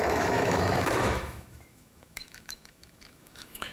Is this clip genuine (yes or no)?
no